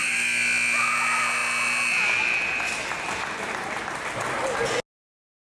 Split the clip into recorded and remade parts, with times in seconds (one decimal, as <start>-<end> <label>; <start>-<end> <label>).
0.0-5.4 recorded